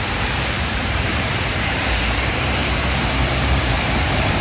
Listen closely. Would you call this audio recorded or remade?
remade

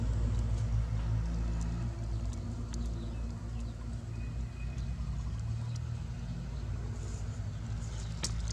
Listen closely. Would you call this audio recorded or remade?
recorded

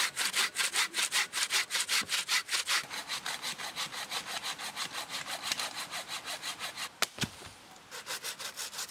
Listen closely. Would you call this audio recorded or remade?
recorded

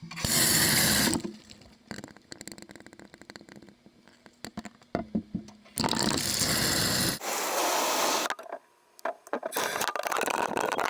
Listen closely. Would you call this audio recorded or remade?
recorded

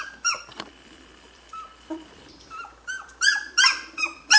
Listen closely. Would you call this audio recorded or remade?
remade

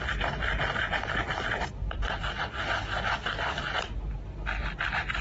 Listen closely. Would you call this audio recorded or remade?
recorded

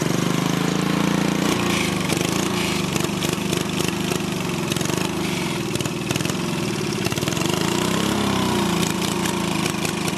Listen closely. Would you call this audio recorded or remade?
remade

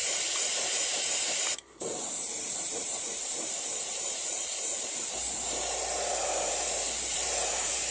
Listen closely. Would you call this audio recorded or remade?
remade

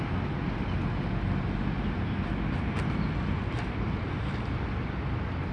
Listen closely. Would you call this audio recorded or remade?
recorded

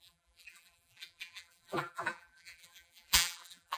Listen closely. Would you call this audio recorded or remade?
remade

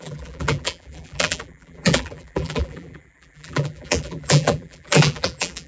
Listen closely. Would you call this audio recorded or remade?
remade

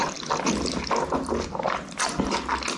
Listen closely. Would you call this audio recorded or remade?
recorded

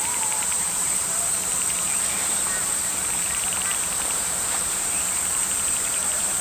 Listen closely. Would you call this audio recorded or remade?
remade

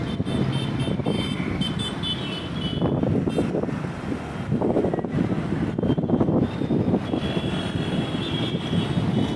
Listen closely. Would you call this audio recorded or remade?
recorded